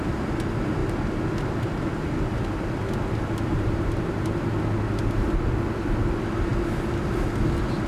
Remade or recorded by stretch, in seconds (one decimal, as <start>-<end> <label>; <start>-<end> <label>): 0.0-3.5 recorded; 3.5-4.4 remade; 4.4-7.9 recorded